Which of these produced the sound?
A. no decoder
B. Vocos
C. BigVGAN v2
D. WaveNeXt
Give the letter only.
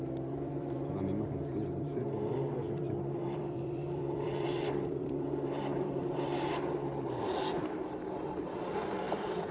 C